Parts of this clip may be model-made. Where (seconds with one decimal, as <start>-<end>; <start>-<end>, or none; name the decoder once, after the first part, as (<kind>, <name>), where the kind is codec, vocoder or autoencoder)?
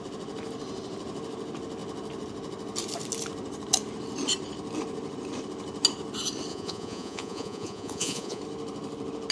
6.5-8.4 (vocoder, Vocos)